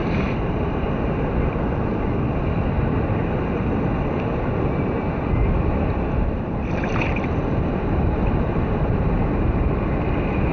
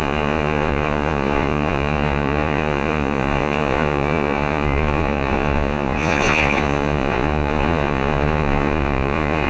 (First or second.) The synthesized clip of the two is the second